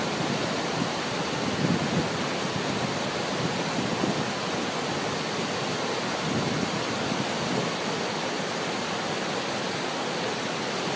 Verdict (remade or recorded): recorded